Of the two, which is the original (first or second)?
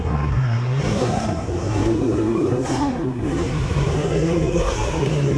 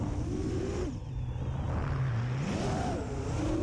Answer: second